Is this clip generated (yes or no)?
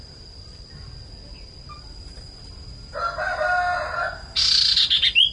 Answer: no